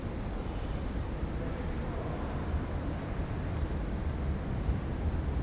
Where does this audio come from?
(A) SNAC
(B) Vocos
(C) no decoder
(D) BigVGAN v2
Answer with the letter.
C